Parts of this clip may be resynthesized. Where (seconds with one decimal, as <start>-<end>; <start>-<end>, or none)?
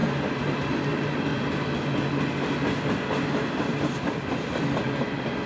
none